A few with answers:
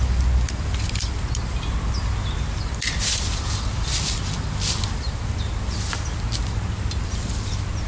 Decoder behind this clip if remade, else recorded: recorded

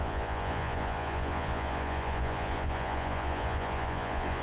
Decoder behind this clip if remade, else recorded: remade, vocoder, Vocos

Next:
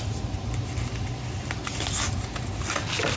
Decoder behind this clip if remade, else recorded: recorded